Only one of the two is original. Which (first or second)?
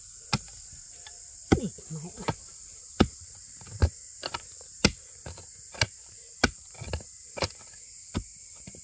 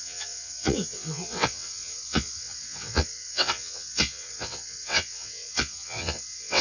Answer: first